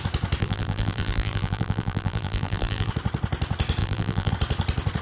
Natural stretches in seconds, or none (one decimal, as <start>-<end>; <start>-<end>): 0.0-0.4; 2.9-3.8; 4.3-5.0